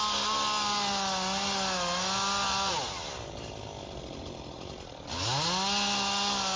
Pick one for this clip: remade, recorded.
recorded